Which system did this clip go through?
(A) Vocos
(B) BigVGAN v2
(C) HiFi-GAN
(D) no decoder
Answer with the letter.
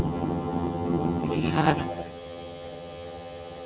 C